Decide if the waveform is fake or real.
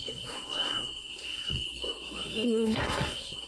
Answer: fake